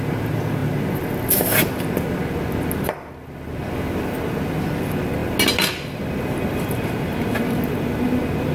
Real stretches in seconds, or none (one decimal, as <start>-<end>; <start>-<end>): 0.0-8.5